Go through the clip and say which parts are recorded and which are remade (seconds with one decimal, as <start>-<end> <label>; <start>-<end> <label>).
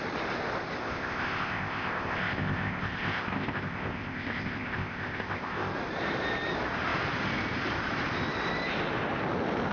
0.0-0.8 recorded; 0.8-5.7 remade; 5.7-9.7 recorded